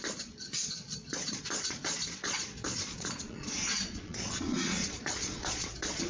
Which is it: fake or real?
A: fake